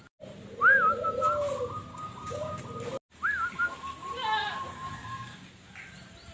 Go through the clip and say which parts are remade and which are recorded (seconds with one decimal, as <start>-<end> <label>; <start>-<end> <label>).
0.0-1.9 recorded; 1.9-2.6 remade; 2.6-5.0 recorded; 5.0-5.7 remade; 5.7-6.3 recorded